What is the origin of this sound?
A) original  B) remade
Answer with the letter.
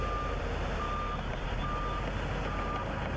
A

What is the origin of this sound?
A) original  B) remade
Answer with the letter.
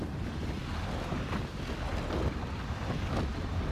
A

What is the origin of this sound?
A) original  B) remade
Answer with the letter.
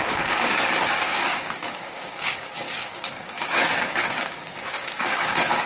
B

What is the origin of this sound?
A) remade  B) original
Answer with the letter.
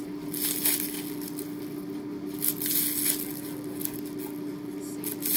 B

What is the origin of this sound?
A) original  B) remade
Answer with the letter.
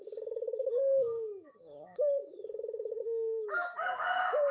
B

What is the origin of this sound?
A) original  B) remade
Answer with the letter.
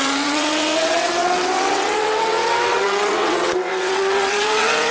B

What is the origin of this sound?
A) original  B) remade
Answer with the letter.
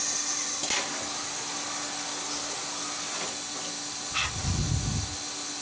A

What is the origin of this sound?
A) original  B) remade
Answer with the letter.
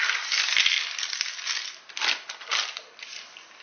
A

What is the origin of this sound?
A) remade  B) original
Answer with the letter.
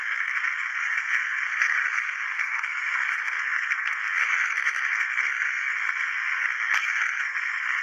A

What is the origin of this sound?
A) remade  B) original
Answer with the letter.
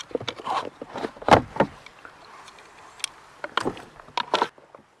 B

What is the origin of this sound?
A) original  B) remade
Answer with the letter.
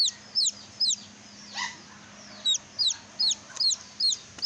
A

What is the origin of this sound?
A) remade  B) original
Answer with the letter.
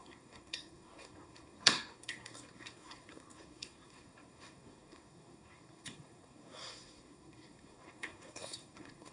A